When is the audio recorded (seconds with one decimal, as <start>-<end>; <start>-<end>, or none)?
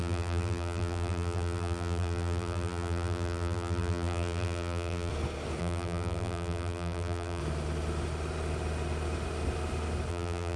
5.1-5.6; 7.4-10.1